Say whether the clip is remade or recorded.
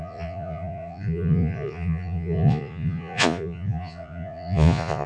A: remade